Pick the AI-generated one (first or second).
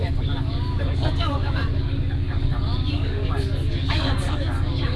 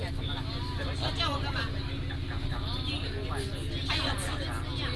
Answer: first